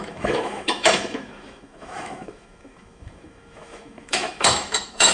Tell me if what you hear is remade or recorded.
remade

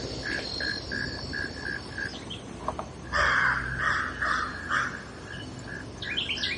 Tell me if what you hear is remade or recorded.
recorded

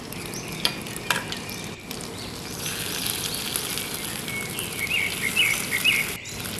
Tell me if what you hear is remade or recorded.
recorded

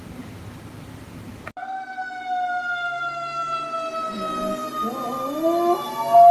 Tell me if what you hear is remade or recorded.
recorded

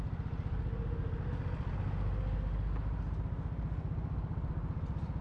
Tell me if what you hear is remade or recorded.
recorded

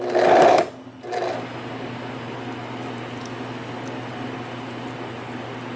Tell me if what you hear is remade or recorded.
recorded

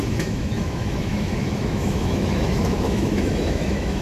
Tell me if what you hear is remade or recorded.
remade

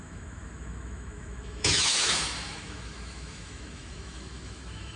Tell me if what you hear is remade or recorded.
remade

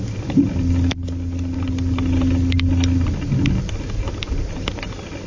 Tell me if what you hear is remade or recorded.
recorded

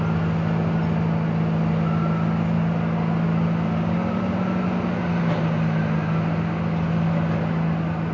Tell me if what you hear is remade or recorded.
recorded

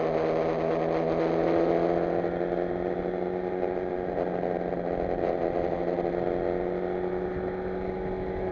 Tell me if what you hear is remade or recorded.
recorded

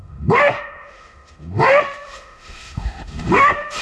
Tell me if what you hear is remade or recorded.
remade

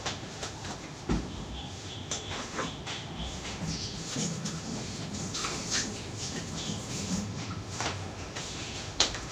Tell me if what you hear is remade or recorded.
remade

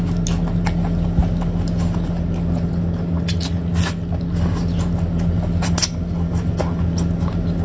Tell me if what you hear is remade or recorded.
recorded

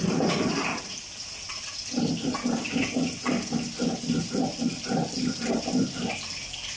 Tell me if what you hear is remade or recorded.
recorded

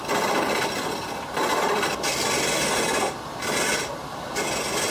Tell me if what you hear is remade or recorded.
recorded